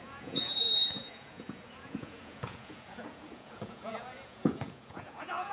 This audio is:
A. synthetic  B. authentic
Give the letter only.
A